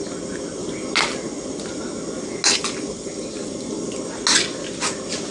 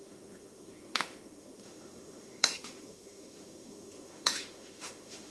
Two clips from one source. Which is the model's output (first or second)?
second